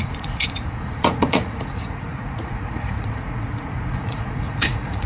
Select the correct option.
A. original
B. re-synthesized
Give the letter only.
B